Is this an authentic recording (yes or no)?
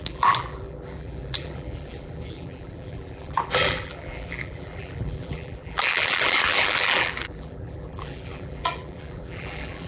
no